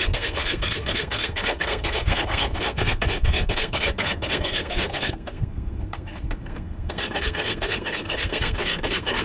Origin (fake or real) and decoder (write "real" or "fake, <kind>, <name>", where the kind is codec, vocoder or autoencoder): fake, codec, SNAC